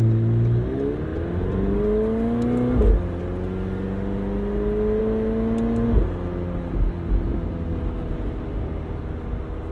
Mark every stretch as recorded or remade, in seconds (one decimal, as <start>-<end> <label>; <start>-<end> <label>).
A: 0.0-9.7 recorded